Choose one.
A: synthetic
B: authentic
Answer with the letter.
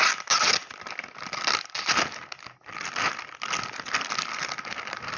B